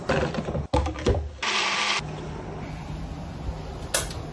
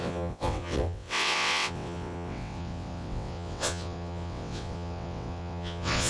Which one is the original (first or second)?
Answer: first